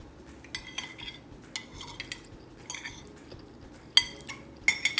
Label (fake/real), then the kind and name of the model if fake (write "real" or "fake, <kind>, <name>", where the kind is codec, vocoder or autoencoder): real